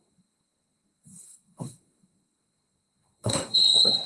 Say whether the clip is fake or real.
fake